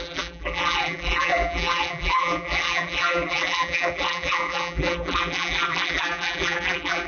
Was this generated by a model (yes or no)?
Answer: yes